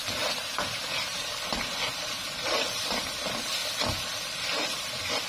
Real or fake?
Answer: fake